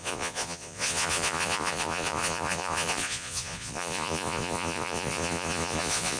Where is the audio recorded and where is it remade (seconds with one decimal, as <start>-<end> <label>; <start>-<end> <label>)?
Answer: 0.0-6.2 remade